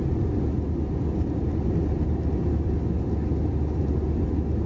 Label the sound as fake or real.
real